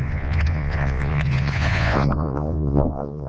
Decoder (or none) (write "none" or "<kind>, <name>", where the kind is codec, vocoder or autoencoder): vocoder, Vocos